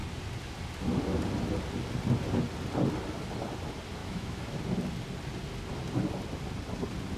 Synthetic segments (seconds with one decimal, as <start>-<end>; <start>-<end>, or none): 4.0-4.6